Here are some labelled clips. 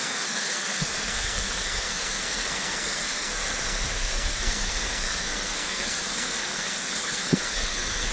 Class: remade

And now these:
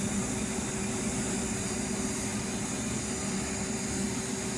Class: recorded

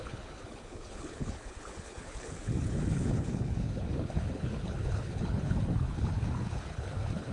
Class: remade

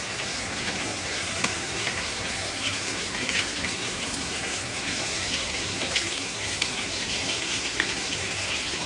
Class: remade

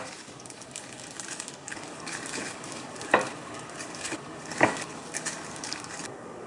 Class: remade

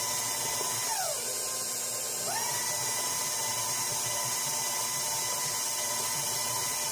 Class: recorded